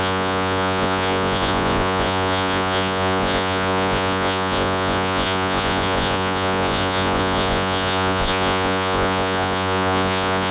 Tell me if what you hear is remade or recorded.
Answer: remade